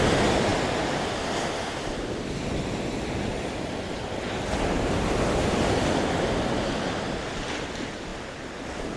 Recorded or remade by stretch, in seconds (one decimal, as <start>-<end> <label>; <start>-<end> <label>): 0.0-9.0 recorded